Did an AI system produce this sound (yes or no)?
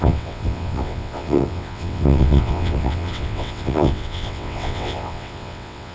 yes